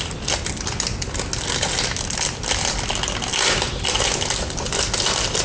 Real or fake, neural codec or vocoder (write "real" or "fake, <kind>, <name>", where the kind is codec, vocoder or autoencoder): real